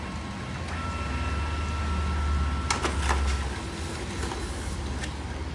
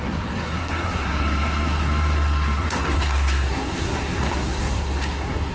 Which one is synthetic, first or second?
second